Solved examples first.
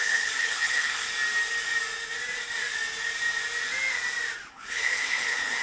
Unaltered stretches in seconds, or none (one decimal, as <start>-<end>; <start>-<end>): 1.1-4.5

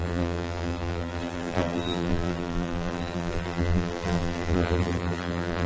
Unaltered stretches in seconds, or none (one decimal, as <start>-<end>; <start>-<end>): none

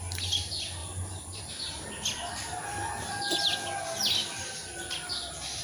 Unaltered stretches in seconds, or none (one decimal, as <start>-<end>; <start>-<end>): 0.0-0.8; 1.4-2.7; 3.2-5.6

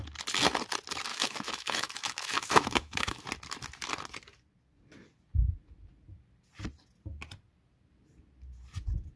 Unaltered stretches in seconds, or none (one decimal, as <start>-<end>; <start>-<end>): 0.0-1.1; 3.2-9.2

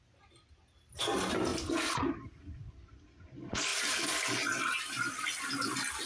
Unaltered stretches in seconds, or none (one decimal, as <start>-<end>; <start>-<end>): 0.0-6.1

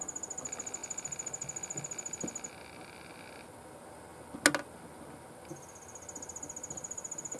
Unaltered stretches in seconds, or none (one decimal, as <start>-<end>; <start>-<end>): 0.0-7.4

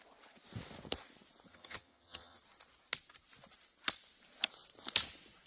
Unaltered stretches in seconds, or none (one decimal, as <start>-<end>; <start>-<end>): 0.0-1.5; 2.4-5.5

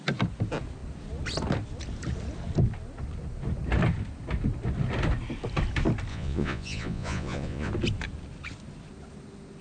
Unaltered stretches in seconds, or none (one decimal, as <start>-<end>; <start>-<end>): 0.0-6.1; 7.7-9.6